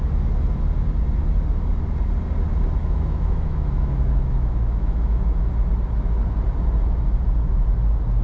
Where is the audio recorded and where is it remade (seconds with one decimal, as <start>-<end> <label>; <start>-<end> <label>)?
0.0-2.8 recorded; 2.8-5.5 remade; 5.5-8.2 recorded

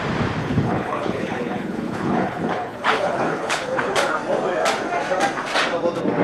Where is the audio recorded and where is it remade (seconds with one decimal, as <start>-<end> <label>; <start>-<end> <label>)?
0.0-0.4 recorded; 0.4-4.1 remade; 4.1-6.2 recorded